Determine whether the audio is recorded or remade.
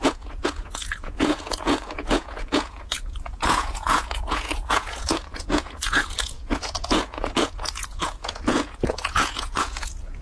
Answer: remade